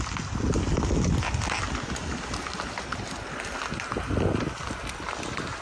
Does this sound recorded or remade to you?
recorded